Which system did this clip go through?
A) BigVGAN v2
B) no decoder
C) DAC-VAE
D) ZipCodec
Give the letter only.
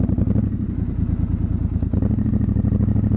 B